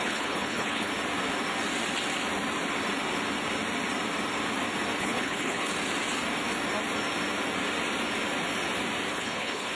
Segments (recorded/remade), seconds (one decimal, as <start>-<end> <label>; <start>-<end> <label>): 0.0-0.9 remade; 0.9-5.0 recorded; 5.0-5.7 remade; 5.7-9.1 recorded; 9.1-9.7 remade